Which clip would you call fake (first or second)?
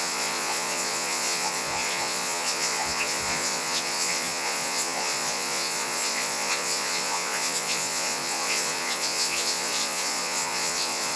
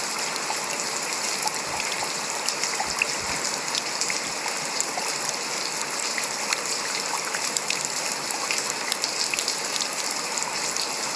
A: first